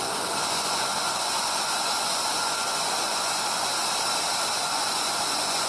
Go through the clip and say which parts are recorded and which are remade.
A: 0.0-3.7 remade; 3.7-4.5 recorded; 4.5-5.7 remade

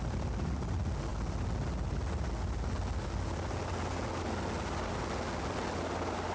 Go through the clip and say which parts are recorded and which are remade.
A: 0.0-6.3 recorded